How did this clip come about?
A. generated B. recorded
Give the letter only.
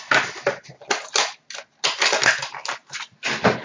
B